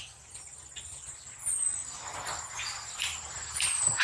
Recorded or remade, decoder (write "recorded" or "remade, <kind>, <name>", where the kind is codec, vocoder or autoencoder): recorded